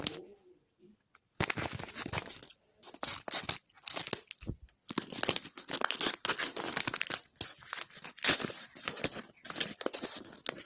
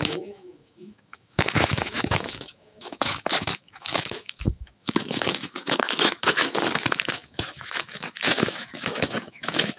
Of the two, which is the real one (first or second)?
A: first